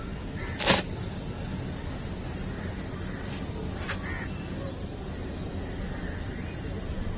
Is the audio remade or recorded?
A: recorded